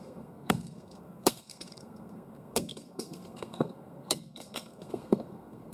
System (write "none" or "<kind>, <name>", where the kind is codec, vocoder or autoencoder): codec, SNAC